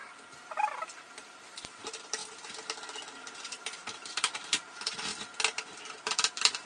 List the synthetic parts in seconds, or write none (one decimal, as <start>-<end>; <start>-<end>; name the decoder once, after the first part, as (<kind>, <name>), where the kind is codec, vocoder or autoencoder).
0.7-2.2 (vocoder, BigVGAN v2); 4.1-5.1; 5.6-6.7